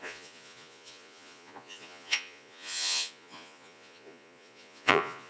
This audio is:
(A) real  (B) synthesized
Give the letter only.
B